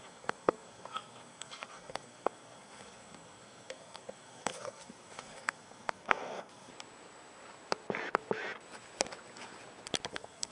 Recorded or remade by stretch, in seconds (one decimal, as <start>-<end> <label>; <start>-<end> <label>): 0.0-6.7 remade; 6.7-10.1 recorded; 10.1-10.5 remade